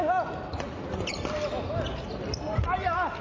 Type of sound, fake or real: real